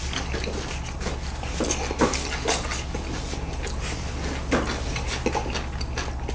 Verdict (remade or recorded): recorded